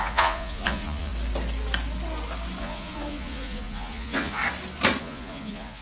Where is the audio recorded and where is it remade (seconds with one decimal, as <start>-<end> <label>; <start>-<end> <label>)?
0.0-1.1 remade; 1.1-2.6 recorded; 2.6-4.4 remade; 4.4-5.0 recorded; 5.0-5.8 remade